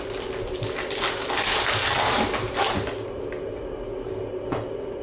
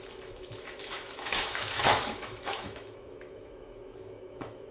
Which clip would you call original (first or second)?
first